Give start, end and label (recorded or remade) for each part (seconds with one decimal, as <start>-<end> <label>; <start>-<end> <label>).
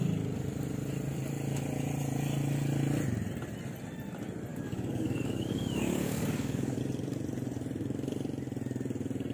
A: 0.0-4.5 recorded; 4.5-6.8 remade; 6.8-9.3 recorded